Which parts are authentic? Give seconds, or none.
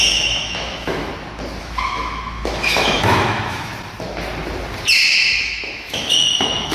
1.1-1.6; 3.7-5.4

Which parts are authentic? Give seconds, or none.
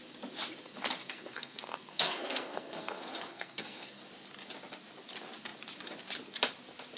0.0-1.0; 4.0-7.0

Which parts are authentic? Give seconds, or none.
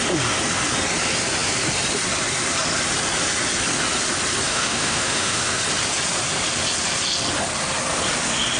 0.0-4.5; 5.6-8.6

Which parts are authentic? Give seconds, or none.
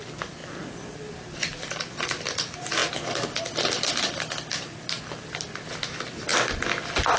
0.0-7.2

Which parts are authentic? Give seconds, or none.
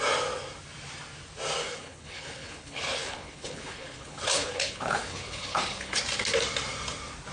0.0-1.6; 6.0-7.3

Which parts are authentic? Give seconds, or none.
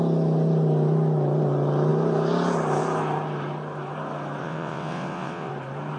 0.0-4.4; 5.5-6.0